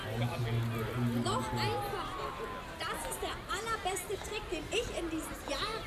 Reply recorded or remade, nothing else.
recorded